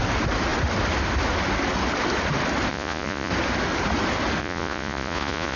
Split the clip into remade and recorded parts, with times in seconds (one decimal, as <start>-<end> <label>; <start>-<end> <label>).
0.0-2.7 recorded; 2.7-3.3 remade; 3.3-4.4 recorded; 4.4-5.6 remade